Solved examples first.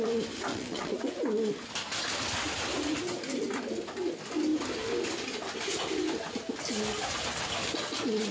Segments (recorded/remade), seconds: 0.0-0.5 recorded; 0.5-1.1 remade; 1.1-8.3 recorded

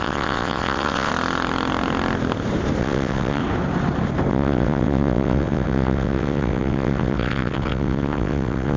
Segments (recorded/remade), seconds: 0.0-1.1 remade; 1.1-2.8 recorded; 2.8-3.4 remade; 3.4-4.3 recorded; 4.3-8.8 remade